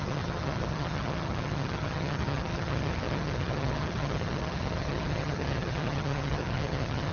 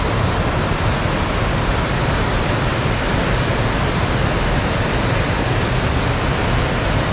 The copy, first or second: first